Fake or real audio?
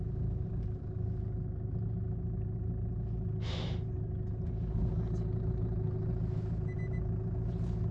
real